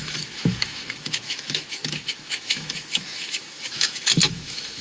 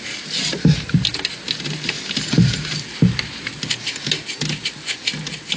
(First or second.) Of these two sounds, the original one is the second